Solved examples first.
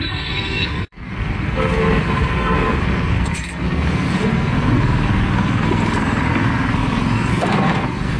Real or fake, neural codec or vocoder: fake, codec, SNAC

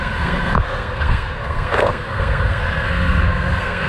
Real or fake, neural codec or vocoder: fake, codec, SNAC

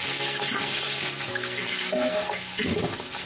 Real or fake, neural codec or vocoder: fake, codec, SNAC